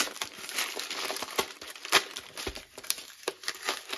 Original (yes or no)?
yes